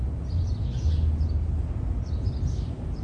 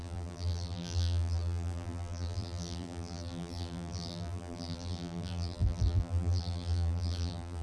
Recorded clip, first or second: first